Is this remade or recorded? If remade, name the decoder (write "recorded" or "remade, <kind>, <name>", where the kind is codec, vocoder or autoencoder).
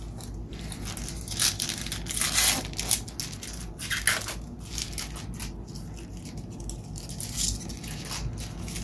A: recorded